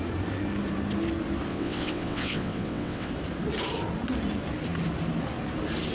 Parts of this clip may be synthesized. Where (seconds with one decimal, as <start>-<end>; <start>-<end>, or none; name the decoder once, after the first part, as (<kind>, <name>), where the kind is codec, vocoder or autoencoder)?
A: 1.5-3.1 (vocoder, WaveNeXt)